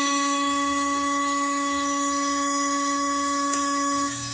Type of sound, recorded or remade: remade